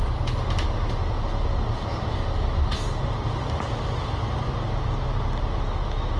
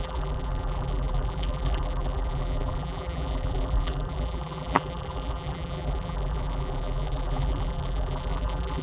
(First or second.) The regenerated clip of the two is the second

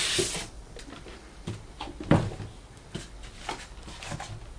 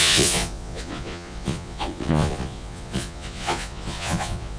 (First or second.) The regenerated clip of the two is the second